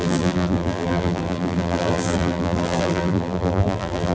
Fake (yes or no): yes